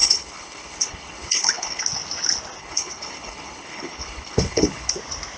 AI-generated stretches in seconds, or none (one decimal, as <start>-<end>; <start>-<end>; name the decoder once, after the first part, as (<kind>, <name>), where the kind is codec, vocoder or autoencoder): 0.0-1.8 (codec, HILCodec); 2.6-4.9